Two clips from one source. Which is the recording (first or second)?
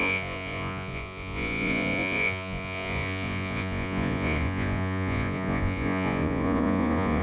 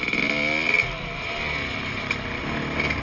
second